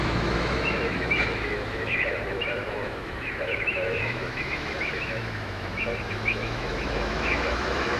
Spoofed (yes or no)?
yes